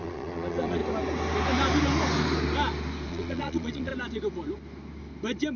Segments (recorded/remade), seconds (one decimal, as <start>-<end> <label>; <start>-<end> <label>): 0.0-0.8 remade; 0.8-3.1 recorded; 3.1-3.9 remade; 3.9-5.6 recorded